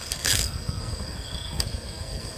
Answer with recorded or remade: remade